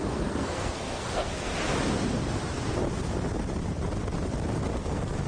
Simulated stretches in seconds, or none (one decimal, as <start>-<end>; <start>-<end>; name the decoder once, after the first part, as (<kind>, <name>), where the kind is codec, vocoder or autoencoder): 0.0-1.5 (codec, SNAC); 4.7-5.3